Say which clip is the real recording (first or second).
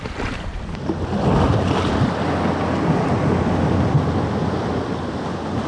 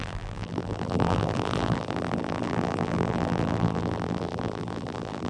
first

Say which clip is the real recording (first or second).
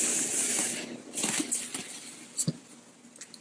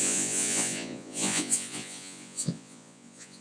first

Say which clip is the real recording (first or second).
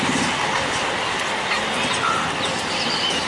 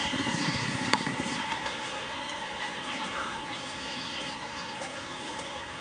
first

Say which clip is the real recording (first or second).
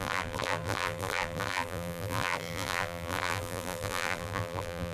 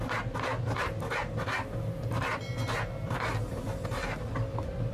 second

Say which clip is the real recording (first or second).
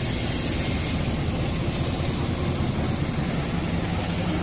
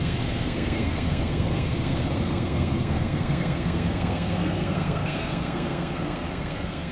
first